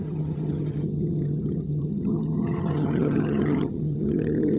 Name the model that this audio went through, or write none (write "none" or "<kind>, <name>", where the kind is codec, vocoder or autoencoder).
vocoder, HiFi-GAN